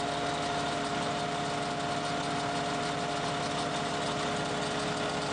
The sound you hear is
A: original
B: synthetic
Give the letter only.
A